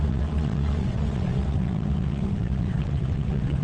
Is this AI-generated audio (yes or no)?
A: yes